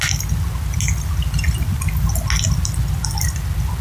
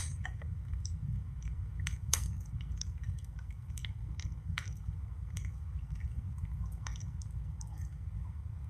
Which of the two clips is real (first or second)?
first